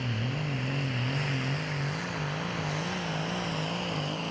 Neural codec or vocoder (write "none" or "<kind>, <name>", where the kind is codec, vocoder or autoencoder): none